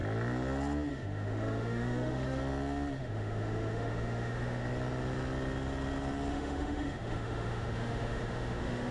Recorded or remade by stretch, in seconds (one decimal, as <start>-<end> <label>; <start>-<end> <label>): 0.0-0.9 recorded; 0.9-2.4 remade; 2.4-3.0 recorded; 3.0-4.6 remade; 4.6-6.3 recorded; 6.3-8.9 remade